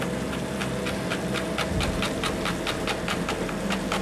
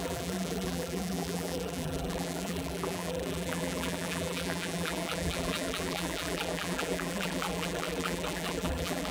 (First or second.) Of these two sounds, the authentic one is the first